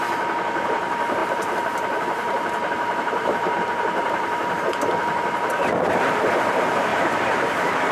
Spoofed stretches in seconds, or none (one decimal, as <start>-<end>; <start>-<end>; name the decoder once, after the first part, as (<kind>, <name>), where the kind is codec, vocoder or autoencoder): 1.2-4.6 (vocoder, BigVGAN v2); 5.6-6.3; 6.9-7.9